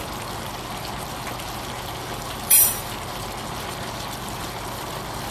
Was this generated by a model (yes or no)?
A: yes